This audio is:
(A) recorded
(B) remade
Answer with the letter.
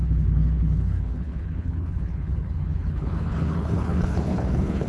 B